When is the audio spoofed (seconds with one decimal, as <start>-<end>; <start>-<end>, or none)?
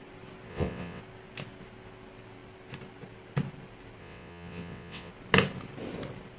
0.5-1.0; 4.0-5.1